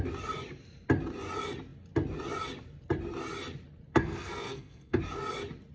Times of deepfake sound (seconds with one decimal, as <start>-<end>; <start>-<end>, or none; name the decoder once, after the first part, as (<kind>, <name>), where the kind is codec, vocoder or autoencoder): 3.9-5.0 (codec, SNAC)

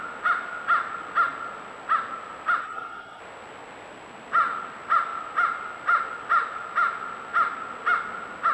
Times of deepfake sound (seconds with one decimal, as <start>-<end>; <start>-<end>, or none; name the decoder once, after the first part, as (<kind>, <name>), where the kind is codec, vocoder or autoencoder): 2.6-3.2 (codec, SNAC)

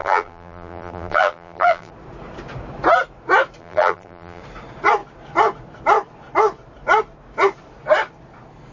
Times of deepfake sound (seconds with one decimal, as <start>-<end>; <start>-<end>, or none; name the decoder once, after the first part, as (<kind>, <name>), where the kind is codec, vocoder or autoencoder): 0.0-1.9 (vocoder, BigVGAN v2); 3.6-4.4